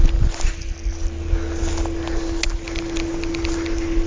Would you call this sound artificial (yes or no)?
no